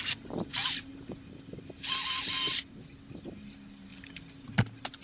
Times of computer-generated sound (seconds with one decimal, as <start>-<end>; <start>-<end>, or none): none